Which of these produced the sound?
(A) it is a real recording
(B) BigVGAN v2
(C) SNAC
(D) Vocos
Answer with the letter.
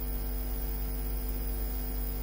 B